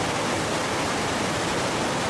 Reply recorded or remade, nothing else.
recorded